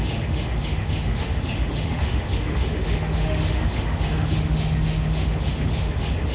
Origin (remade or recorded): remade